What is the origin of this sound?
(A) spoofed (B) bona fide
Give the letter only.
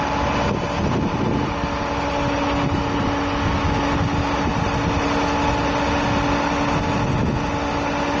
B